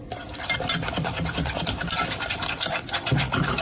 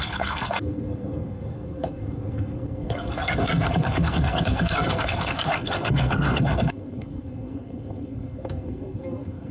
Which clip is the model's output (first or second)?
second